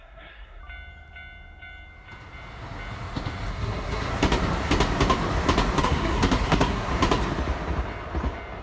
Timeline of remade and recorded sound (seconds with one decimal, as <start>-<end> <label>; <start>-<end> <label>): 0.0-0.6 remade; 0.6-3.5 recorded; 3.5-4.1 remade; 4.1-5.8 recorded; 5.8-6.9 remade; 6.9-8.6 recorded